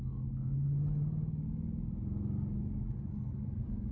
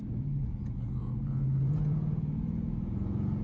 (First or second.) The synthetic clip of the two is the second